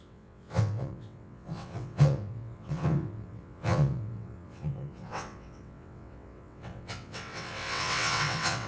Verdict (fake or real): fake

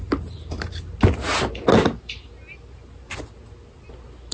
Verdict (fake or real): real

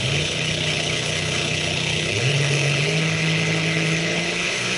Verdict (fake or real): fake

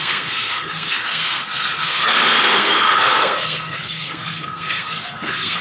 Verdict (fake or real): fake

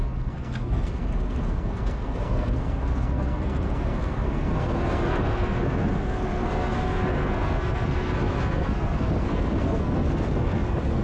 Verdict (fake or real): fake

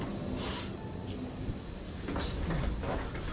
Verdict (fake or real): real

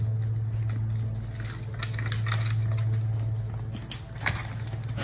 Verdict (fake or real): real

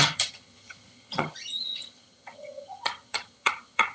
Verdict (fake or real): fake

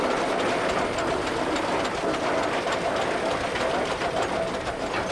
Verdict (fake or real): real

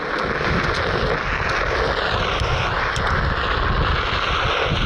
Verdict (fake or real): real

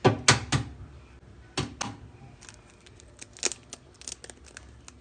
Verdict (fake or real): real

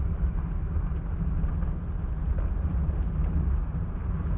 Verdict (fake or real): real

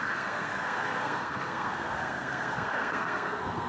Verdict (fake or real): fake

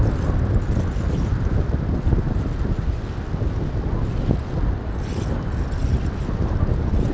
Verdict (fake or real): real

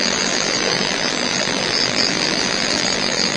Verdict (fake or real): fake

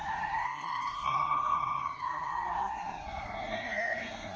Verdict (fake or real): fake